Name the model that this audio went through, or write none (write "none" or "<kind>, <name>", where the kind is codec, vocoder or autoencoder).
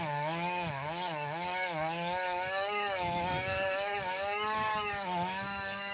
autoencoder, DAC-VAE